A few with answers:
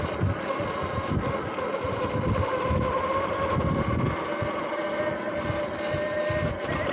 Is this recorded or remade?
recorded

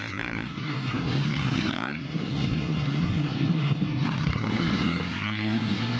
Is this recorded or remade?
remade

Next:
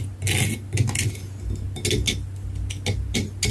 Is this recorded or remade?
recorded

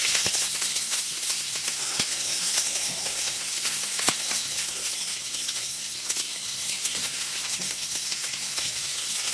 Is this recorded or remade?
remade